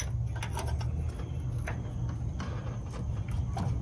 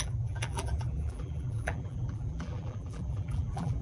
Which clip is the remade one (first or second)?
second